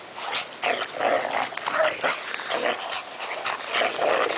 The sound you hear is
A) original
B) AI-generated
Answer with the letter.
A